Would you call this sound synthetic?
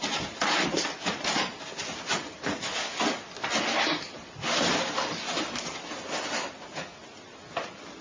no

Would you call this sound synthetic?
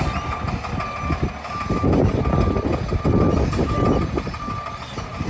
no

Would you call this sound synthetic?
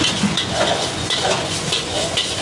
yes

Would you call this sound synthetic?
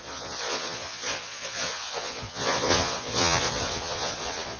yes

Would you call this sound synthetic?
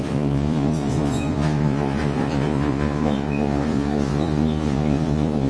yes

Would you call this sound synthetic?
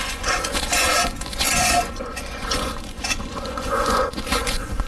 yes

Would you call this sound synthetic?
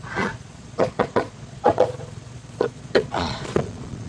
yes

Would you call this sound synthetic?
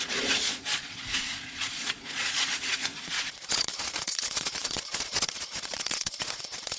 yes